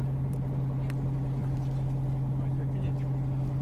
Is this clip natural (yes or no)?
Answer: yes